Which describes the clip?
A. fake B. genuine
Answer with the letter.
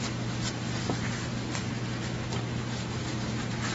B